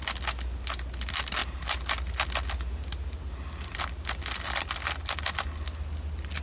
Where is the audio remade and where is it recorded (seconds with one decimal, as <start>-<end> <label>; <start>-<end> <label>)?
0.0-6.4 recorded